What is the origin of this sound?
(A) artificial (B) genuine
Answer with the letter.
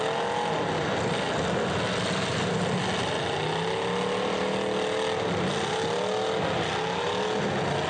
B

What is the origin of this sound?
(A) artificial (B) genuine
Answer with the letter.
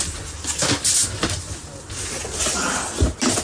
B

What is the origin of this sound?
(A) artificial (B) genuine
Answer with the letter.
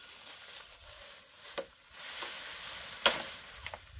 B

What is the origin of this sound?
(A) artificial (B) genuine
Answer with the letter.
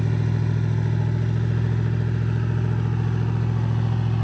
B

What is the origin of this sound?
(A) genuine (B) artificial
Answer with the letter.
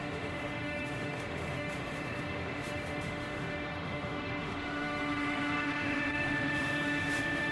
B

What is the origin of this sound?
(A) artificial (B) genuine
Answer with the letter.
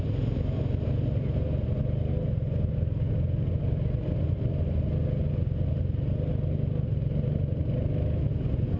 B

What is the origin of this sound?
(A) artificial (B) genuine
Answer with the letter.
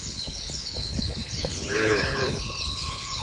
A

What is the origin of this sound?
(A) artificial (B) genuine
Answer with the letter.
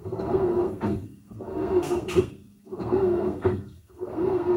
A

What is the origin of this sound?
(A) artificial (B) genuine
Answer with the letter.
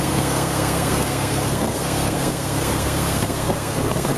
A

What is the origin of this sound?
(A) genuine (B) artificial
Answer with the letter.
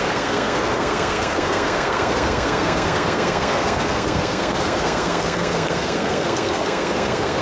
B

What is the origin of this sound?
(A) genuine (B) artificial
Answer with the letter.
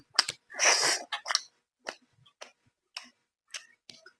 A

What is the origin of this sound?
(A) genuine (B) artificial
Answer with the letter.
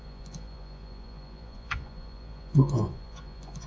B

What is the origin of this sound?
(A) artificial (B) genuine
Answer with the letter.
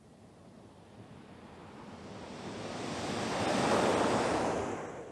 B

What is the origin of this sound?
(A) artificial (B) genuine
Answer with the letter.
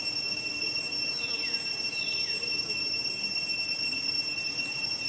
B